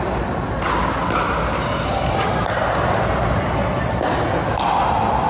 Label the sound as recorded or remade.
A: recorded